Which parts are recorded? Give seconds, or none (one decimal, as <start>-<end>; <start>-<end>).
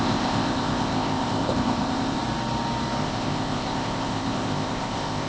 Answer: 2.2-3.0